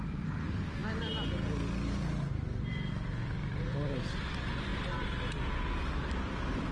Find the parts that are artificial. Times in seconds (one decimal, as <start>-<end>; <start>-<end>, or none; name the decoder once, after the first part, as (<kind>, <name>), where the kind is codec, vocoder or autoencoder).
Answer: none